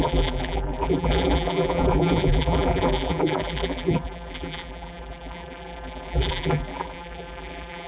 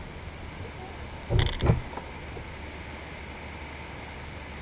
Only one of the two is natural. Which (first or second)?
second